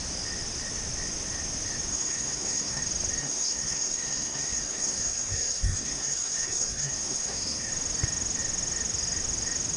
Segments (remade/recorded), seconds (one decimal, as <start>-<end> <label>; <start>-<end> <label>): 0.0-1.9 recorded; 1.9-2.8 remade; 2.8-3.2 recorded; 3.2-7.7 remade; 7.7-9.8 recorded